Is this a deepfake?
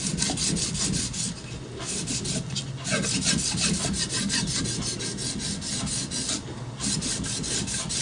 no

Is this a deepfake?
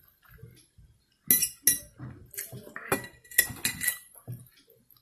no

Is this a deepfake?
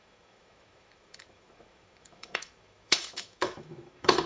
yes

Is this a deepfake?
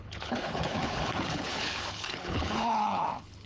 yes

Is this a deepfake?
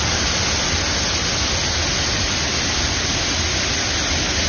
no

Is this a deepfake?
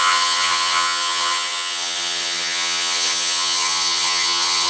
yes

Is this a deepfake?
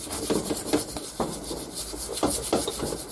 no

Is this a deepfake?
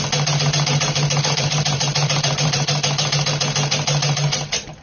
yes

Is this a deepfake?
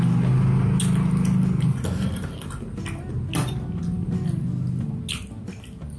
no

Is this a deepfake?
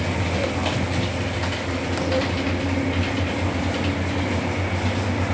no